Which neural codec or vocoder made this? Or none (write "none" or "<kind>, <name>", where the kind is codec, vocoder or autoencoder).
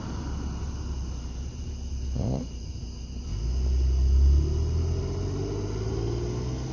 none